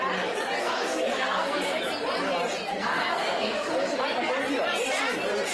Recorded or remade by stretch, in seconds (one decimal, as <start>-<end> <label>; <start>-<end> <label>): 0.0-0.6 recorded; 0.6-1.8 remade; 1.8-2.7 recorded; 2.7-4.0 remade; 4.0-5.5 recorded